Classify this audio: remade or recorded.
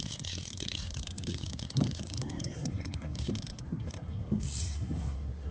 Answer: remade